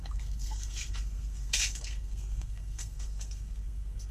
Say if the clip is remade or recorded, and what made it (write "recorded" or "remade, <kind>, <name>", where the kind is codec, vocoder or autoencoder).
remade, codec, SNAC